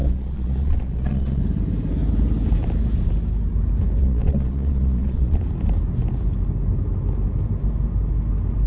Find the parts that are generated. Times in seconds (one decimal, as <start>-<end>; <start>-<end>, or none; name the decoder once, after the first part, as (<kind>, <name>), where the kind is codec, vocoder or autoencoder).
0.0-1.4 (vocoder, Vocos); 4.0-5.4